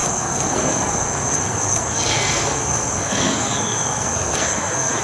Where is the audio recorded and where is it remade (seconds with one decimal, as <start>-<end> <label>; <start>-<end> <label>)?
0.0-5.0 remade

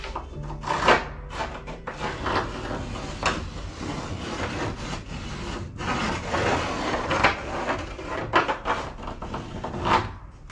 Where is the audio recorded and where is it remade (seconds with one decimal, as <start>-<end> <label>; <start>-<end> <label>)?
0.0-10.5 recorded

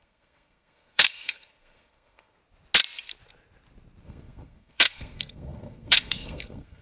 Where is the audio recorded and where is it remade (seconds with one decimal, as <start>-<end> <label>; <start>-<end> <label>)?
0.0-2.4 remade; 2.4-4.0 recorded; 4.0-6.8 remade

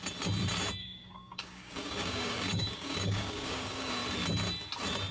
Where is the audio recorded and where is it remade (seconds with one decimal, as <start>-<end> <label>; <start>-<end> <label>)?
0.0-0.8 recorded; 0.8-3.9 remade; 3.9-5.1 recorded

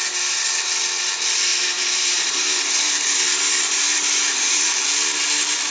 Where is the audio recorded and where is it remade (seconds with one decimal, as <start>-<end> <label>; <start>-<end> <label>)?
0.0-1.5 recorded; 1.5-4.8 remade; 4.8-5.7 recorded

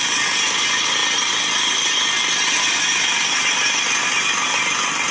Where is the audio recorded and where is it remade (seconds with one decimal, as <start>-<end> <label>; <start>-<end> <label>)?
0.0-5.1 recorded